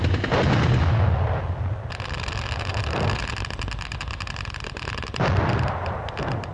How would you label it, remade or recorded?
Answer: recorded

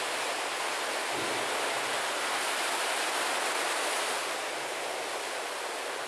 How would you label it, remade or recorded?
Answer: recorded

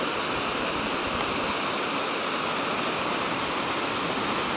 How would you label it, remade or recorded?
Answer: recorded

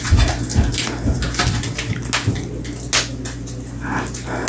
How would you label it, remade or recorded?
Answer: recorded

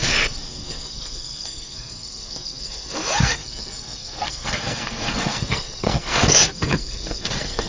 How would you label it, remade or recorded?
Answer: remade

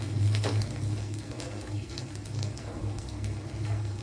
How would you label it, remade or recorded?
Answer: remade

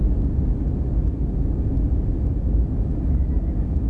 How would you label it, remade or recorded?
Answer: recorded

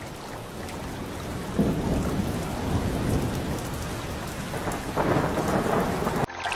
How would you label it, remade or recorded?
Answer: recorded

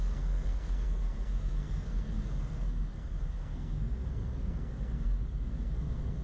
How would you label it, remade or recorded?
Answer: remade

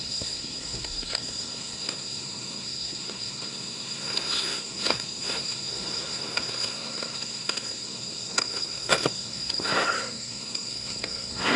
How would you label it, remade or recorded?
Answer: remade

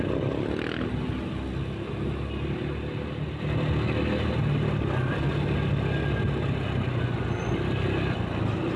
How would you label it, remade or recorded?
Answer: recorded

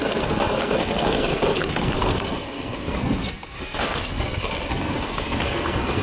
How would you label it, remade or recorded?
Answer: remade